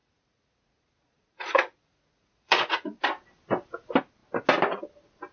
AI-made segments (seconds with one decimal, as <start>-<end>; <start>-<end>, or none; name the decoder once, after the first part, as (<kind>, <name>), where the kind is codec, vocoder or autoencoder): 0.0-3.0 (vocoder, Vocos)